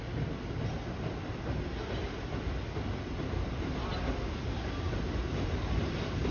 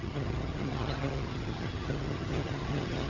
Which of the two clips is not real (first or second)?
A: second